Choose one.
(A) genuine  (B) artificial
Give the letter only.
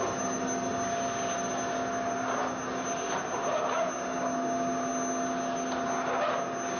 A